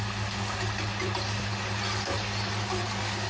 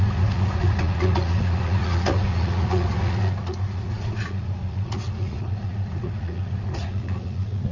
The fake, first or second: second